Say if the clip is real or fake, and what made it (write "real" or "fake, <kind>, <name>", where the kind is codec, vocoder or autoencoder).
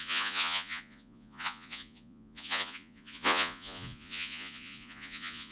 fake, vocoder, Vocos